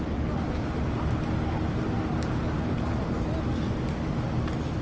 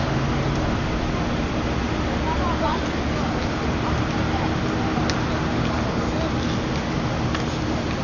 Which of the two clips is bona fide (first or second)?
second